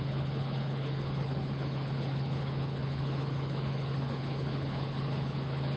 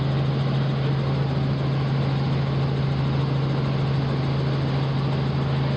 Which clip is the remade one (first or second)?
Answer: first